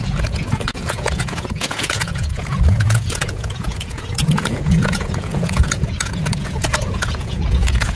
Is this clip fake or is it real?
fake